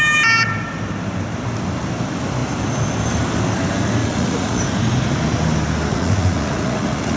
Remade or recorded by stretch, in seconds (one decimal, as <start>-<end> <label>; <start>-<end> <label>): 0.0-4.0 recorded; 4.0-4.6 remade; 4.6-5.9 recorded; 5.9-7.2 remade